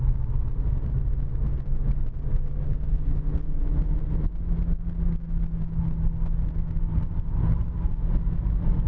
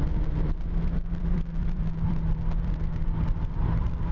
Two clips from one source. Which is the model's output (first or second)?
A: second